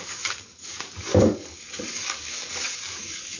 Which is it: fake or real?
fake